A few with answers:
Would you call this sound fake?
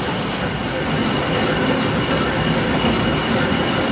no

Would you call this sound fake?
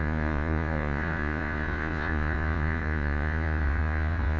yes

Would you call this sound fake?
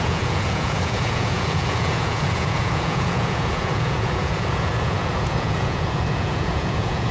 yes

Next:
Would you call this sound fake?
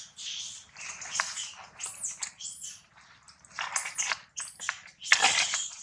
no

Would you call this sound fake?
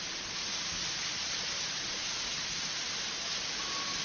no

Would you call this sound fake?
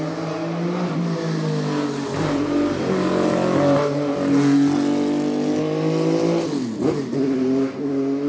no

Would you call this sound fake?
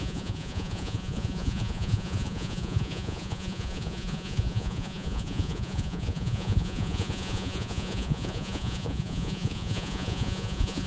yes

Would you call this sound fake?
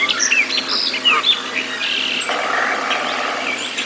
no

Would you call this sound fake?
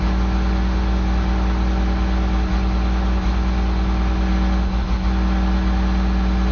no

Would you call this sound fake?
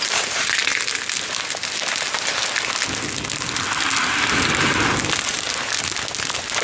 no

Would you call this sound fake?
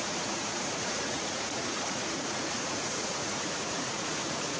yes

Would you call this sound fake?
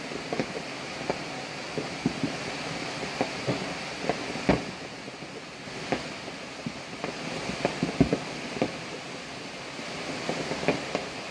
no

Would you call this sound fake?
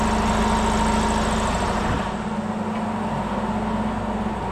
no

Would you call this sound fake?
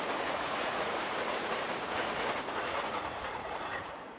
yes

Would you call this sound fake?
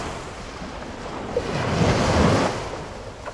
no